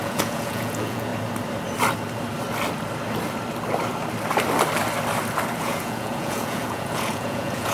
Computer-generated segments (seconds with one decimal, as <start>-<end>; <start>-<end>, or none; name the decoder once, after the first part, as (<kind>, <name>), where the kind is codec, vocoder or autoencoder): 0.0-1.1 (vocoder, Vocos); 5.6-7.7